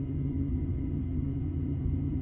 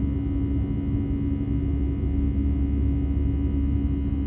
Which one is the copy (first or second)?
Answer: first